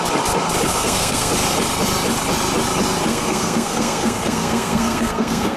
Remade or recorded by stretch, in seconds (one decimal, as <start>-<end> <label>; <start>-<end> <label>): 0.0-0.7 recorded; 0.7-1.3 remade; 1.3-3.1 recorded; 3.1-5.6 remade